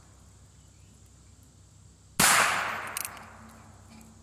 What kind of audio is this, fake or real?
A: real